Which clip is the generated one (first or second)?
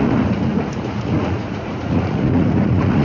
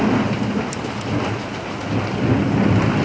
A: first